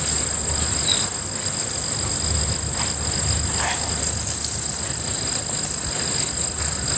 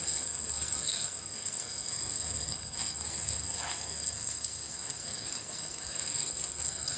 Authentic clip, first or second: first